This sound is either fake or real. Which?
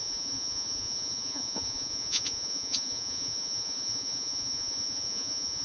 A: fake